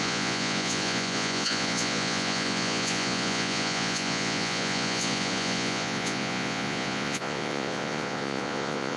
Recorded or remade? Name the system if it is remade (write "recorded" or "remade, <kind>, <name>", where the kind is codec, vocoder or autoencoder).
remade, vocoder, Vocos